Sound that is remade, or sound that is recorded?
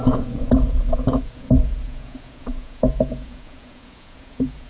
remade